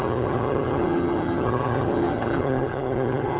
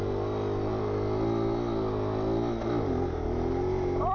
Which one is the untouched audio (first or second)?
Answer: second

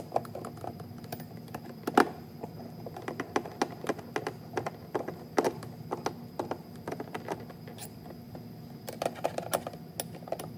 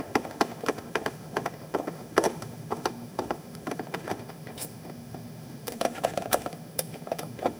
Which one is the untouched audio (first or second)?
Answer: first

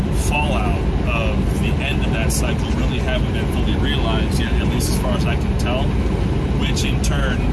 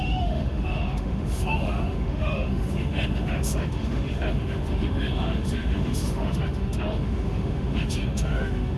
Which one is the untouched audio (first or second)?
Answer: first